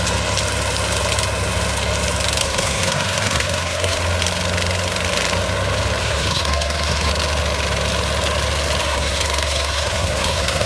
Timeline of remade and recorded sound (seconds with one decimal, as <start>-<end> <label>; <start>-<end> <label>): 0.0-2.4 recorded; 2.4-4.0 remade; 4.0-6.0 recorded; 6.0-7.1 remade; 7.1-8.8 recorded; 8.8-10.7 remade